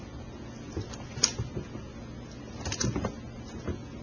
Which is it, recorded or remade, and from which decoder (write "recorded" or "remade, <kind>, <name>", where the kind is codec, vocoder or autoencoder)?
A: recorded